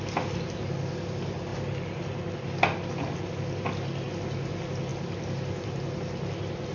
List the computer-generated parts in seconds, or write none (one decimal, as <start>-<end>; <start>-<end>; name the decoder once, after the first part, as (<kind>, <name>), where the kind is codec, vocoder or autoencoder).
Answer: none